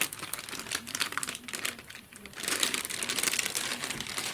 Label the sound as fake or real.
fake